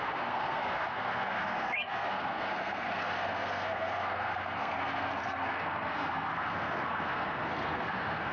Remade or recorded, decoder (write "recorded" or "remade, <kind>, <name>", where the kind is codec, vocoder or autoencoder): remade, codec, SNAC